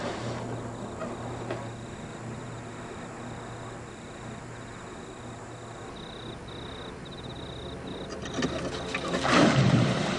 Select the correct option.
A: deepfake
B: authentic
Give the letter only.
B